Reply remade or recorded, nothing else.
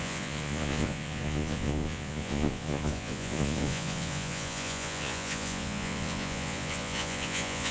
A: remade